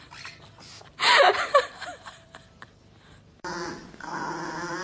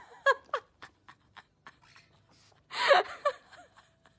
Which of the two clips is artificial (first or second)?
first